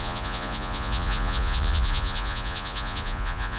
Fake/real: fake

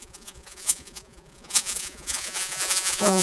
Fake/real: fake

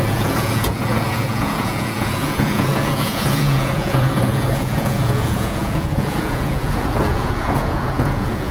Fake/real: fake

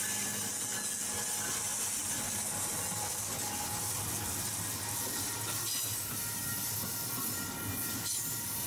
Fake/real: real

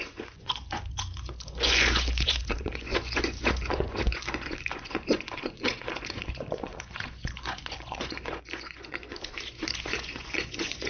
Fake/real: fake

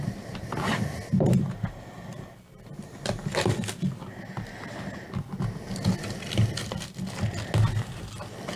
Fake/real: real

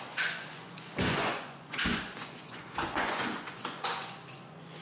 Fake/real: fake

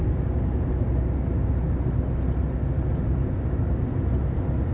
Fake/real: real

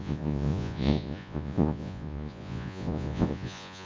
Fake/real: fake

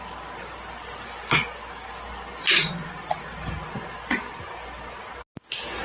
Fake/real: real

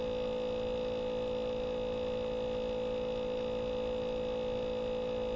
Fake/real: real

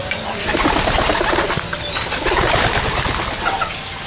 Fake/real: real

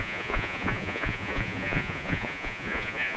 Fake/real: fake